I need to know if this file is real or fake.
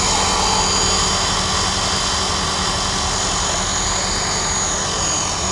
real